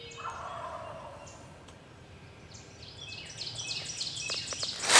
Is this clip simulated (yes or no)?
no